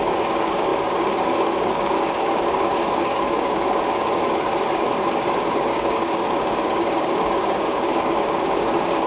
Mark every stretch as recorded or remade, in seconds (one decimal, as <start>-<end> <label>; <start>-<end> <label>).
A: 0.0-9.1 remade

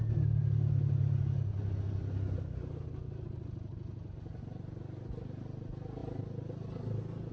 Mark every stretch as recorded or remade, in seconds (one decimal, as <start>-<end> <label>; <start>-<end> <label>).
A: 0.0-7.3 recorded